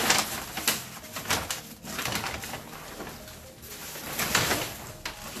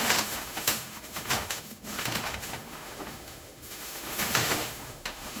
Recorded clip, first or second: first